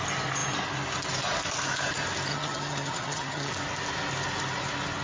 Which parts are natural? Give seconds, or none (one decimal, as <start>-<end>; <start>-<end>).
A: 0.0-2.3; 3.5-5.0